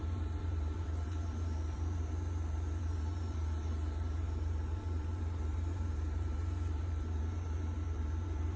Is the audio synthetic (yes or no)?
yes